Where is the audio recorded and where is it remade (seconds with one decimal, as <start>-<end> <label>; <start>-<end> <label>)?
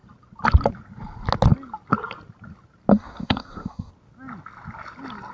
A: 0.0-2.9 recorded; 2.9-3.9 remade; 3.9-5.3 recorded